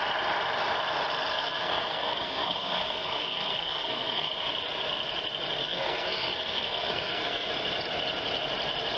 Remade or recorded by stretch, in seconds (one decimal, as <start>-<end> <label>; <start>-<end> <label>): 0.0-1.3 recorded; 1.3-4.3 remade; 4.3-5.6 recorded; 5.6-7.5 remade; 7.5-9.0 recorded